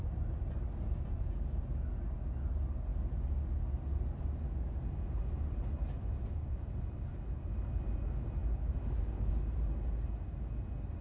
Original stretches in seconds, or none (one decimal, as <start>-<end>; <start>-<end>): 0.0-11.0